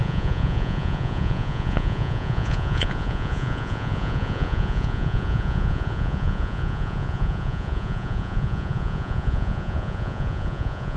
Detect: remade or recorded remade